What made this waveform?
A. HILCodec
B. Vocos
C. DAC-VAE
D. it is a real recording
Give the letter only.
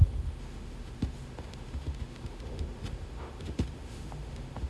C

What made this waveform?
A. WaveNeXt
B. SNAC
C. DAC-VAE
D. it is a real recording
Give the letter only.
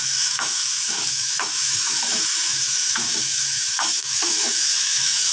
C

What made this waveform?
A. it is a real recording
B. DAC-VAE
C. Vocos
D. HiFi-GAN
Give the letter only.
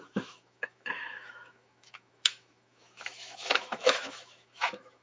B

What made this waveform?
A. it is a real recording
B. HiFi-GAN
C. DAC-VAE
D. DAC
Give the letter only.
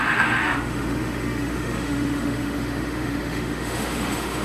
C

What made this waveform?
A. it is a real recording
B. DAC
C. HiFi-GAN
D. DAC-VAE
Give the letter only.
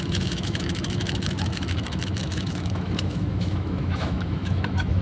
D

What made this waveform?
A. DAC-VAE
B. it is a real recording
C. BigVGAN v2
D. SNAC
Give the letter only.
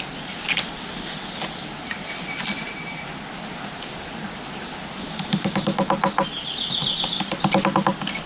B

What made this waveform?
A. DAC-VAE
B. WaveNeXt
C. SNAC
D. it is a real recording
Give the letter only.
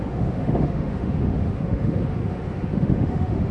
A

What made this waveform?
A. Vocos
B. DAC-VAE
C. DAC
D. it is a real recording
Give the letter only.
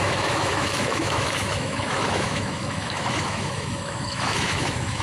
B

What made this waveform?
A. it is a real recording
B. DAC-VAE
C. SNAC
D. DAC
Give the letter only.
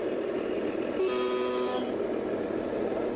A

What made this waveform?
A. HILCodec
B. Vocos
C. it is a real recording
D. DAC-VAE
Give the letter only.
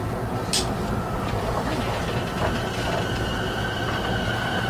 C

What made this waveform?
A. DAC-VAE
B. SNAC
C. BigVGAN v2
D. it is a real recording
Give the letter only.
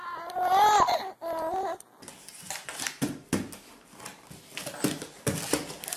D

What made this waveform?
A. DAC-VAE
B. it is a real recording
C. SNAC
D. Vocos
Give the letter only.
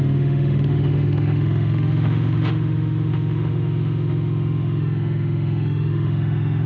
A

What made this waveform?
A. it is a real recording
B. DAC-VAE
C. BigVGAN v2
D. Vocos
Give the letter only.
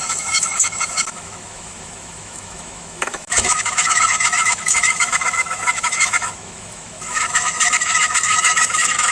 B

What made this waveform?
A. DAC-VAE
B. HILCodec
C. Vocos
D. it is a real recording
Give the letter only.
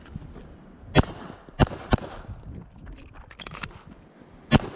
D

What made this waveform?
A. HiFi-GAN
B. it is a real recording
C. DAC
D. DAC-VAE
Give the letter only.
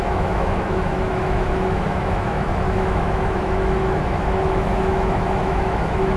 D